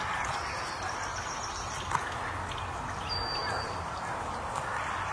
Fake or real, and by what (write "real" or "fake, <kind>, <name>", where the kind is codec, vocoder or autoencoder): real